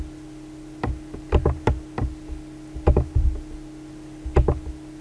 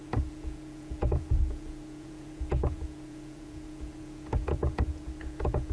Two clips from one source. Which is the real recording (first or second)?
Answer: first